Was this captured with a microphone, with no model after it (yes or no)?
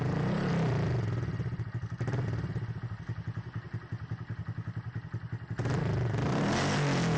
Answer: yes